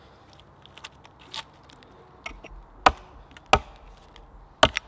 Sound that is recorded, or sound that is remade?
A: recorded